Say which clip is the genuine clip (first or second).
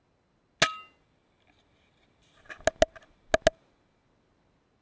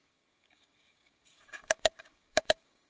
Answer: first